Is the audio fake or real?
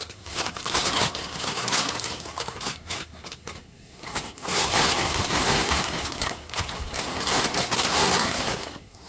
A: fake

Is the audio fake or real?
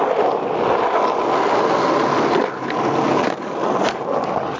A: real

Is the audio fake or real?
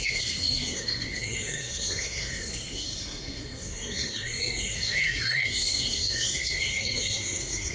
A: fake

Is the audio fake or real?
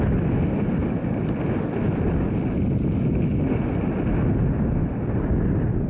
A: real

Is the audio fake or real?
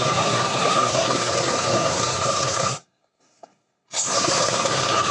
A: fake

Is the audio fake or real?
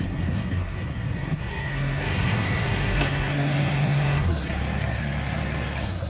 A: fake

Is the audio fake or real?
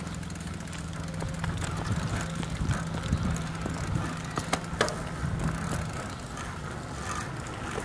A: real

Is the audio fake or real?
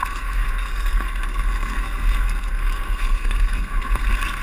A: fake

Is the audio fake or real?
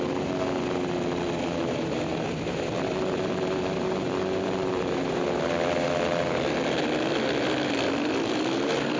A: real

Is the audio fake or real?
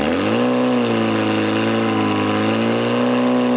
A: real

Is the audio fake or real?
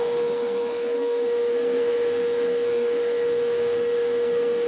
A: fake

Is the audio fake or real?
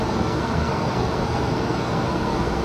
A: fake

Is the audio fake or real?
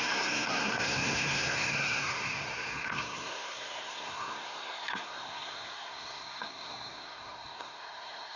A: fake